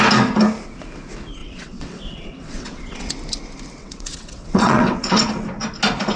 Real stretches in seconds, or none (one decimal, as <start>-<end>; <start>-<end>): 0.0-1.4; 3.1-3.8; 5.3-6.2